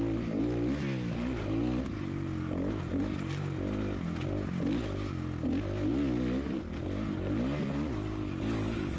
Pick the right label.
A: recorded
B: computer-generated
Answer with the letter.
A